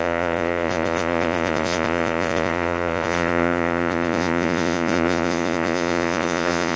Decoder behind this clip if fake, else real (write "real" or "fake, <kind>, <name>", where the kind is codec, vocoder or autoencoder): fake, vocoder, Vocos